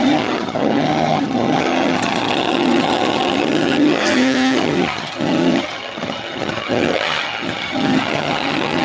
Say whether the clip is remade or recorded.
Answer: remade